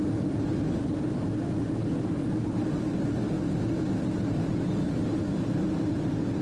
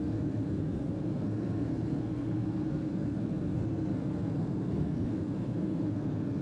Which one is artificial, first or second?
second